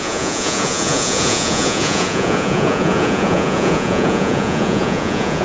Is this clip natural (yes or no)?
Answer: no